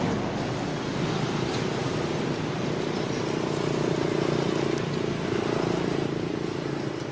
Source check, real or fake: real